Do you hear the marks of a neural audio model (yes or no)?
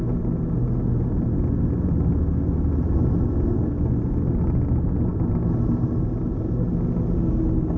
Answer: no